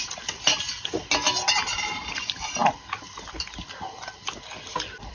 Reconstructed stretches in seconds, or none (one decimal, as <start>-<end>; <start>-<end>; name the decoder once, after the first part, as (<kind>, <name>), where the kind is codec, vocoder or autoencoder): none